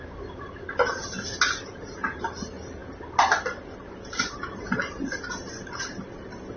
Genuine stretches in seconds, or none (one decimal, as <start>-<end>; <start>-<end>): 0.0-6.6